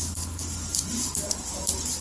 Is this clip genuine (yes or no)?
yes